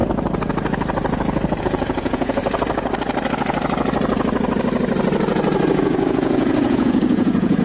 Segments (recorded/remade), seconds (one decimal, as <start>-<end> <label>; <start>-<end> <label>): 0.0-1.6 recorded; 1.6-2.4 remade; 2.4-5.7 recorded; 5.7-7.6 remade